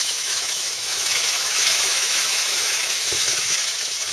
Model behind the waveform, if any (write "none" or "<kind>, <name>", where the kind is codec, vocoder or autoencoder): autoencoder, DAC-VAE